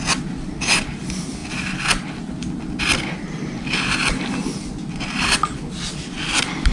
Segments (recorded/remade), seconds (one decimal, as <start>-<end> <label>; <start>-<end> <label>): 0.0-6.7 recorded